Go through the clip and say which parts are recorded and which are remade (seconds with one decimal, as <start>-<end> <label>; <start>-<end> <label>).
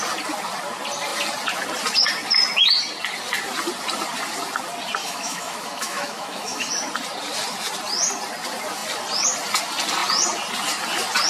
0.0-5.0 recorded; 5.0-6.7 remade; 6.7-11.3 recorded